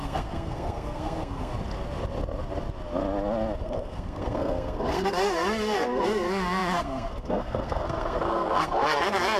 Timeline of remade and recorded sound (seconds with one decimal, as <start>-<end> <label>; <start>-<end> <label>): 0.0-1.5 remade; 1.5-3.6 recorded; 3.6-9.4 remade